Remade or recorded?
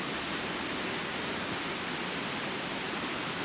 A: recorded